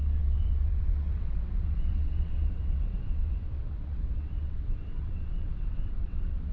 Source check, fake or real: fake